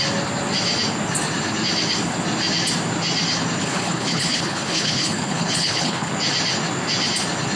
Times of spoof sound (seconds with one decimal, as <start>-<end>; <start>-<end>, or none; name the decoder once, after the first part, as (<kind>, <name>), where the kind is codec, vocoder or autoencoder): 3.6-6.1 (codec, HILCodec)

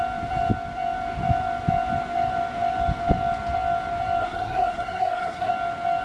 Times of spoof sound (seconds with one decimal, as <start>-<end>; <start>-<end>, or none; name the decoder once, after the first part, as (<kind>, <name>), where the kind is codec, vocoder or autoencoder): 4.2-5.5 (codec, SNAC)

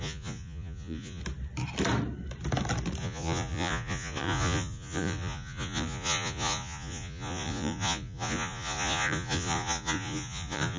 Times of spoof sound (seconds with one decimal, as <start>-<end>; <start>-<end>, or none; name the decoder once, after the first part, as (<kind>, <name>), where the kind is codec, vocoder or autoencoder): 0.0-1.2 (vocoder, Vocos); 3.0-10.8

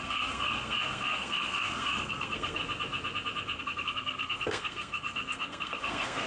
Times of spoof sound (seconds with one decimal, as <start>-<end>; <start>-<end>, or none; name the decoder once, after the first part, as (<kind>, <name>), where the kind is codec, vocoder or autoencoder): 0.0-2.6 (codec, SNAC); 3.6-6.3

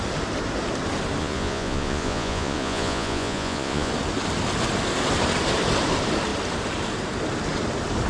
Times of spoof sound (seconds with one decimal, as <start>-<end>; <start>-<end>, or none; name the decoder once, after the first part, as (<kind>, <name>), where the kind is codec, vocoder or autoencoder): 1.2-3.9 (vocoder, Vocos)

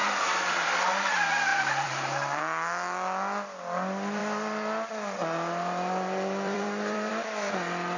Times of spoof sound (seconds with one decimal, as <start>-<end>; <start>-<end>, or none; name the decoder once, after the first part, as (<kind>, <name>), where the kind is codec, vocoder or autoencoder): 0.0-0.7 (vocoder, BigVGAN v2); 1.5-2.4; 4.2-7.1